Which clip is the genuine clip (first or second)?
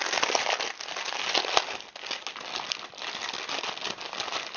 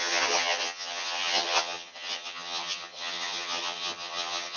first